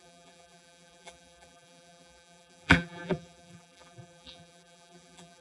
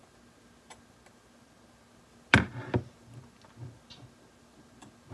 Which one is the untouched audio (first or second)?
second